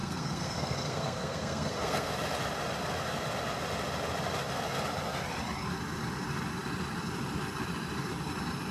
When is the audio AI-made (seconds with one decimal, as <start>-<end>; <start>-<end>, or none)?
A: 0.0-2.1